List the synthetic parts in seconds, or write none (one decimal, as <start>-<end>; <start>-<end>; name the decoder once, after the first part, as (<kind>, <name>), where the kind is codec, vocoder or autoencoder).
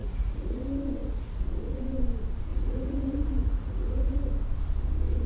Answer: 0.0-0.6 (vocoder, Vocos); 1.0-1.8; 2.5-4.2